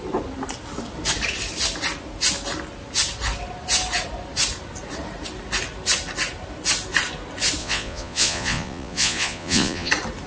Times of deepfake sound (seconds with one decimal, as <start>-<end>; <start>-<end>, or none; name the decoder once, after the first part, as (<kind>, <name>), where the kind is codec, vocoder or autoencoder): 7.6-9.9 (vocoder, Vocos)